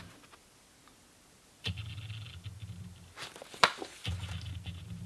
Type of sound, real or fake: real